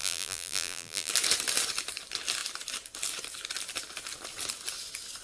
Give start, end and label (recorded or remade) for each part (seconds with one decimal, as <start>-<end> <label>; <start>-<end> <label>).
0.0-1.1 remade; 1.1-5.2 recorded